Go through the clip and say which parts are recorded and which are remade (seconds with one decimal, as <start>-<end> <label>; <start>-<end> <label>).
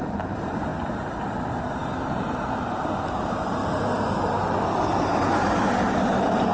0.0-3.6 remade; 3.6-6.0 recorded; 6.0-6.5 remade